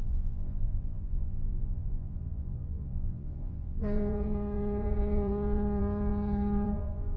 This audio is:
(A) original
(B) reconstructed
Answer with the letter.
B